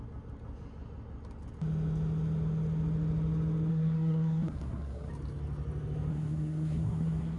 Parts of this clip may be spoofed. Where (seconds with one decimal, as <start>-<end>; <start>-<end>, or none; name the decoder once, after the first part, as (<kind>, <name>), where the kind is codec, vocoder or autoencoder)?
3.7-5.1 (codec, SNAC); 6.1-7.4